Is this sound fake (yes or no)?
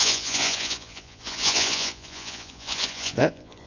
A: yes